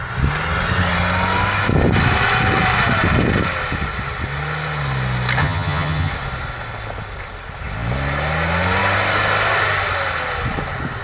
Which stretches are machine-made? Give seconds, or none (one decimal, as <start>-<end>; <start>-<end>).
5.4-6.1